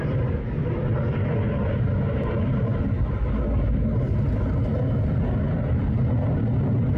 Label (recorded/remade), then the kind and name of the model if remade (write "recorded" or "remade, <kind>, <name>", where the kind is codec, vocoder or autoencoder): recorded